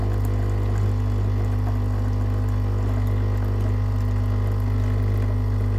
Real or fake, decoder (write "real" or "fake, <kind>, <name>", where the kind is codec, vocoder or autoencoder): real